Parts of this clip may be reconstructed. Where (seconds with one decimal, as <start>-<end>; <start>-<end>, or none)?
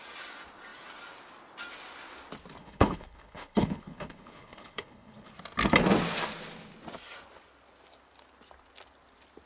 2.6-5.3